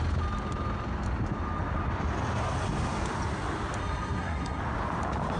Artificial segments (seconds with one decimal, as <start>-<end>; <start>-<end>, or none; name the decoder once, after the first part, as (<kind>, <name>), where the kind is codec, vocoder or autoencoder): 3.8-4.6 (codec, SNAC)